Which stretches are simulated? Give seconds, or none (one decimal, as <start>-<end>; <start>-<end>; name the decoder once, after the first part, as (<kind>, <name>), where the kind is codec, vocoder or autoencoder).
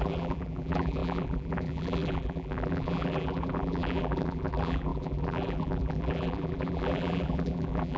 0.0-8.0 (vocoder, BigVGAN v2)